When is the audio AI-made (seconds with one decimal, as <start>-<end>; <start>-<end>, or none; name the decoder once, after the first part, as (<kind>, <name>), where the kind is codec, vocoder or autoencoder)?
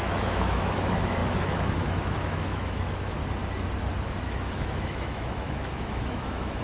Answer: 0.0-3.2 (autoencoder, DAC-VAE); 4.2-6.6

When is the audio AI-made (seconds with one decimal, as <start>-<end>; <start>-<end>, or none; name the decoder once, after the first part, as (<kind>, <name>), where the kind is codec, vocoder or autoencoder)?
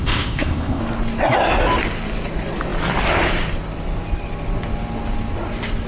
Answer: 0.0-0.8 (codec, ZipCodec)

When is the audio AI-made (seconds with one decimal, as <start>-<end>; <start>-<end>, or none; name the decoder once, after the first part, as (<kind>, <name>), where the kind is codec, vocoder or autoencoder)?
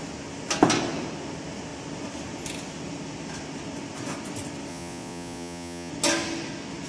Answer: 4.7-5.9 (vocoder, Vocos)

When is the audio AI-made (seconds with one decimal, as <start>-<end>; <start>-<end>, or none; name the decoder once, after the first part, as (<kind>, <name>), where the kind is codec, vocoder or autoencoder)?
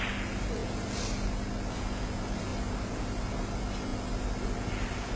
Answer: none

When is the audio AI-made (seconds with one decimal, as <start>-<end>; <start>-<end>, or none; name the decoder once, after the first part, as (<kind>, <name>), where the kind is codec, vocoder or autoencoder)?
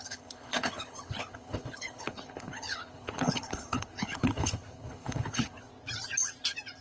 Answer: 0.0-5.7 (codec, HILCodec)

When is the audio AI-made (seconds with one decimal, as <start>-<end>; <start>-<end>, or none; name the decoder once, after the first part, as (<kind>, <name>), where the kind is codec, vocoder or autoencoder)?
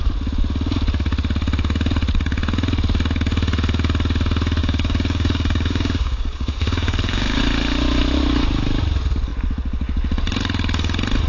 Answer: 4.6-7.4 (codec, DAC)